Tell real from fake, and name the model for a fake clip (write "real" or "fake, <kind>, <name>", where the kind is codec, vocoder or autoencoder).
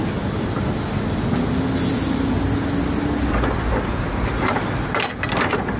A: real